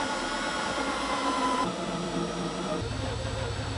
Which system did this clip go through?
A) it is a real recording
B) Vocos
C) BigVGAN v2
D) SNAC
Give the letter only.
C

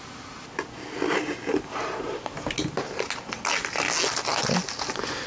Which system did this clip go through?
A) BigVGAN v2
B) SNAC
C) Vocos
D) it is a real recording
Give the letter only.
D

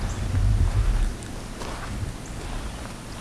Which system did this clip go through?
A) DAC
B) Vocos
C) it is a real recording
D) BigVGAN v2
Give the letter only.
C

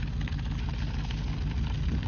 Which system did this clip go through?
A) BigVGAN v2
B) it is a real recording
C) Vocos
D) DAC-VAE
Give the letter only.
B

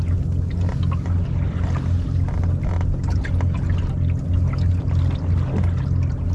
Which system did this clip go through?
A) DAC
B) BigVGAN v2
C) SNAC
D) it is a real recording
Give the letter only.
D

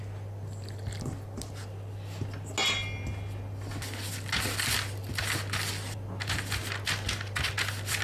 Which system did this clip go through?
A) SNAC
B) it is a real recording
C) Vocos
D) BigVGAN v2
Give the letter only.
B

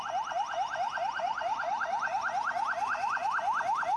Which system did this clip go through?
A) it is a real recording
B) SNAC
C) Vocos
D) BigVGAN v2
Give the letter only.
A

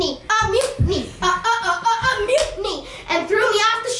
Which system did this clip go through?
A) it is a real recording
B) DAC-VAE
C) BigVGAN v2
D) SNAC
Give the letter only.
A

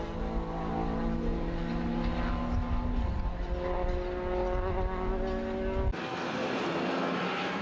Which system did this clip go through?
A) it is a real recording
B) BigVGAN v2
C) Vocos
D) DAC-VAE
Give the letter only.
A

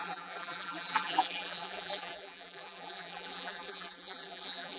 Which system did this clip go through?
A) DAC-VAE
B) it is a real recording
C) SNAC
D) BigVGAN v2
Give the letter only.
D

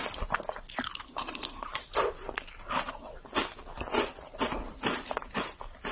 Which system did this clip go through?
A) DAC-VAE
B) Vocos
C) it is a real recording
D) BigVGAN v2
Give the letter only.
C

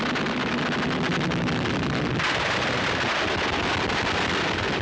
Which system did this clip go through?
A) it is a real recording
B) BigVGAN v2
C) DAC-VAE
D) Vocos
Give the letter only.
B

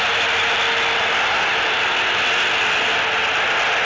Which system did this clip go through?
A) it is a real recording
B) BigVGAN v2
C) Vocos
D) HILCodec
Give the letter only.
A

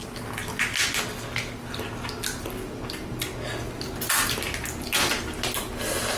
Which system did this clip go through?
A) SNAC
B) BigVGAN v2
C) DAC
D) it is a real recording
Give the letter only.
D